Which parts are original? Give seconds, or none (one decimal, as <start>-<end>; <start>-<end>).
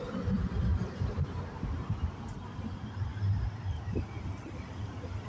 0.0-0.7; 2.6-3.1; 4.0-5.3